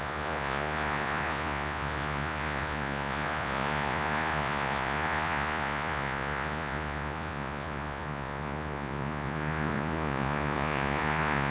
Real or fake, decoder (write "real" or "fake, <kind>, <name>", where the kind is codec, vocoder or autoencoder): fake, vocoder, Vocos